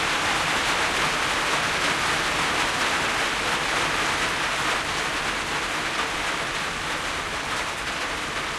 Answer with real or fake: real